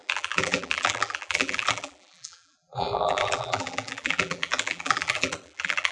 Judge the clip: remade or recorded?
remade